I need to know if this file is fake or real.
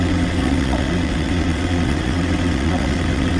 fake